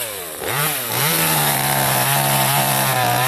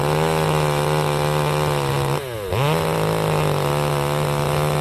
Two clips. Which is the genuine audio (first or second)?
second